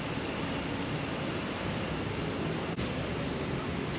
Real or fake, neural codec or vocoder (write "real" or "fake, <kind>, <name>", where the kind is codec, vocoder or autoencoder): real